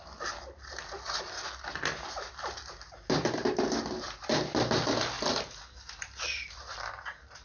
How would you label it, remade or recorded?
recorded